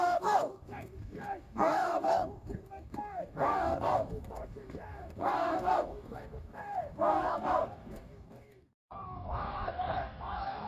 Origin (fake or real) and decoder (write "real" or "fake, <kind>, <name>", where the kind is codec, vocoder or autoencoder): fake, codec, DAC